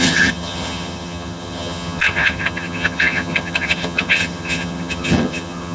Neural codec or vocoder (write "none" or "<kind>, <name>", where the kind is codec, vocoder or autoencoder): vocoder, HiFi-GAN